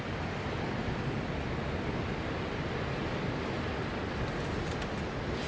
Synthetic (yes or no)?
no